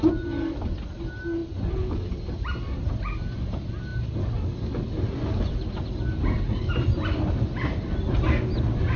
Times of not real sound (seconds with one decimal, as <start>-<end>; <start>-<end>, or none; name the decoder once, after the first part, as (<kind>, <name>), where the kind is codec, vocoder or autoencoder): none